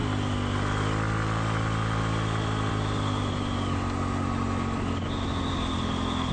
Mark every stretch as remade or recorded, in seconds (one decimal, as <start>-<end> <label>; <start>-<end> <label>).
0.0-6.3 recorded